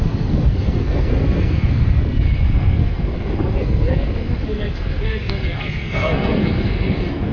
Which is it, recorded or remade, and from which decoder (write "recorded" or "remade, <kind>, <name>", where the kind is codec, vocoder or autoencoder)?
remade, codec, SNAC